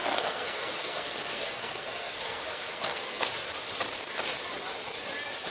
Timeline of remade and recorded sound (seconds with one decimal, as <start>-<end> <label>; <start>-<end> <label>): 0.0-3.3 remade; 3.3-5.5 recorded